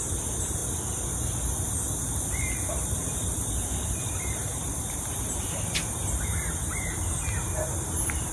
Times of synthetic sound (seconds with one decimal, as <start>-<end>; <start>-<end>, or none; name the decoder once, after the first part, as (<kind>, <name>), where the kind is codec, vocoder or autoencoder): 0.0-0.6 (vocoder, BigVGAN v2); 2.7-8.3